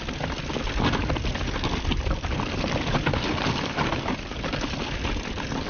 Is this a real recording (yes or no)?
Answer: yes